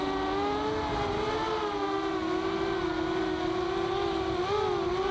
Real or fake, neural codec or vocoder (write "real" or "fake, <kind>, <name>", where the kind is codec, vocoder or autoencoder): real